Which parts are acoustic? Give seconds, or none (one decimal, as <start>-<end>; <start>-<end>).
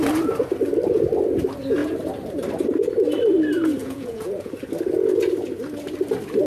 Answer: 0.0-3.8; 4.5-6.5